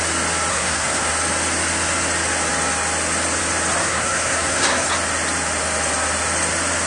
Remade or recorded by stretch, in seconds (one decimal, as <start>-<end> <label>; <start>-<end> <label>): 0.0-0.5 recorded; 0.5-1.1 remade; 1.1-3.8 recorded; 3.8-4.9 remade; 4.9-6.9 recorded